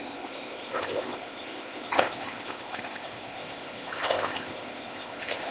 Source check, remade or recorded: remade